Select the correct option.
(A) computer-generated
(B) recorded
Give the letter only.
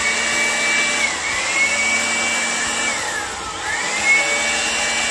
B